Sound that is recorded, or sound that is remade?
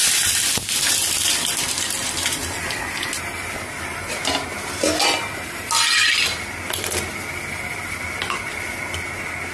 recorded